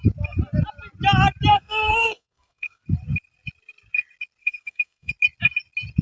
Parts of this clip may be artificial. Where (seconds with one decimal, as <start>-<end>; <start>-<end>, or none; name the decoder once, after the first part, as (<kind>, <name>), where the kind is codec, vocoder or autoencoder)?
1.5-2.8 (codec, SNAC); 4.4-5.1